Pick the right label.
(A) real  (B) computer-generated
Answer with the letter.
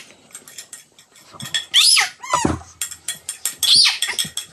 A